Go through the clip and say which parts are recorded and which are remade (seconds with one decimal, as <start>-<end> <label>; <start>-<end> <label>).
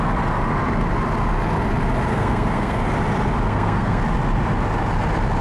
0.0-2.1 recorded; 2.1-2.8 remade; 2.8-3.5 recorded; 3.5-4.0 remade; 4.0-5.4 recorded